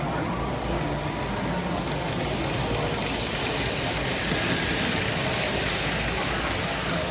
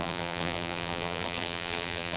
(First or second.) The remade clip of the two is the second